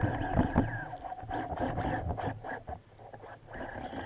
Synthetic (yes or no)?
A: no